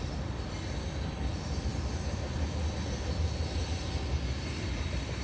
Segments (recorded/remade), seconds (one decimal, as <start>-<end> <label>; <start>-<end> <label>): 0.0-5.2 recorded